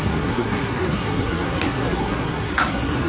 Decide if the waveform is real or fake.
fake